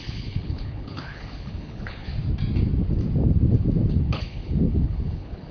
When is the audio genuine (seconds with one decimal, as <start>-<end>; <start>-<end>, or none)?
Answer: 2.1-3.9